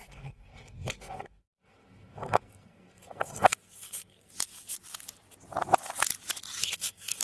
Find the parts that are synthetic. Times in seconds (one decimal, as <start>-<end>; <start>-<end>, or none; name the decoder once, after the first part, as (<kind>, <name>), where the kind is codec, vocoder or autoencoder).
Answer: 0.0-4.3 (codec, SNAC); 6.6-7.2